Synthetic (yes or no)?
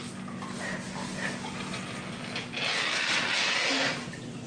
no